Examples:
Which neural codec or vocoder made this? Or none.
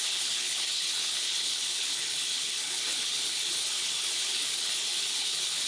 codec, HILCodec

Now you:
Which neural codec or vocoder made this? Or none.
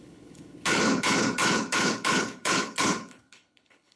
codec, HILCodec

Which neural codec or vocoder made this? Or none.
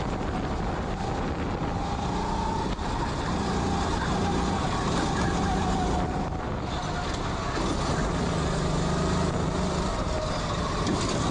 none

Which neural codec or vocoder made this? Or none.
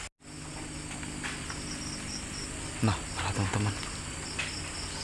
none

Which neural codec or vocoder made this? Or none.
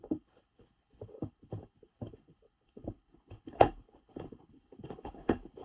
codec, HILCodec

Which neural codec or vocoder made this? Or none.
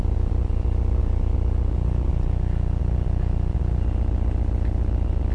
none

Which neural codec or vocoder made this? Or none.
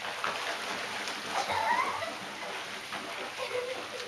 none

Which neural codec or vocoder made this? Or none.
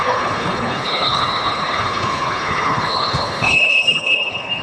codec, HILCodec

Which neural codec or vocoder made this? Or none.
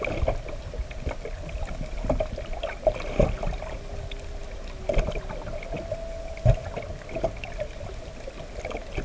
none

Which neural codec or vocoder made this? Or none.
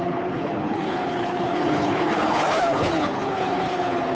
codec, HILCodec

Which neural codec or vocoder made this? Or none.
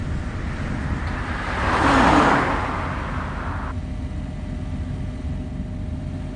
none